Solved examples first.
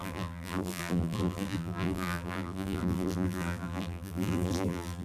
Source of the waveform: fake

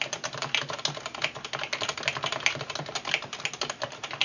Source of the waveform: real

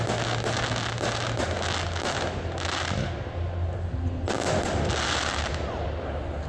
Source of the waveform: real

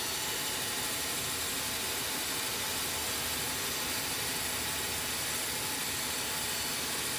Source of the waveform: real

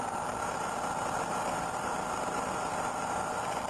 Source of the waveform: real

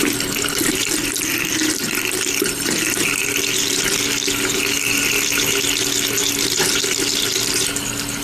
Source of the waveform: real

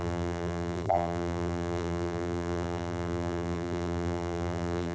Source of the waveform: fake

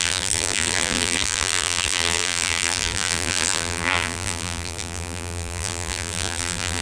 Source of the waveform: fake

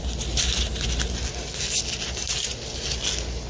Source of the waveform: real